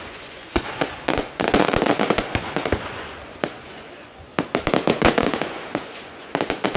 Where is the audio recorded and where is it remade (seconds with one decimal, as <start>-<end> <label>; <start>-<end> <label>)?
0.0-4.3 remade; 4.3-4.9 recorded; 4.9-6.8 remade